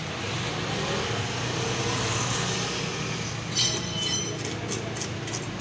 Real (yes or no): yes